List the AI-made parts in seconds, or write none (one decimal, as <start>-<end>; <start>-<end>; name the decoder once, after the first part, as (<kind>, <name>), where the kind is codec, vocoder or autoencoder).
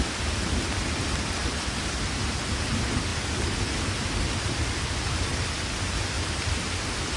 0.0-7.2 (vocoder, BigVGAN v2)